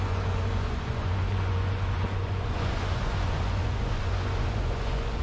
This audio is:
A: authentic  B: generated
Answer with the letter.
B